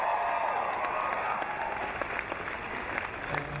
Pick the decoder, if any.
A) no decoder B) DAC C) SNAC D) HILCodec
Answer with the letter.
A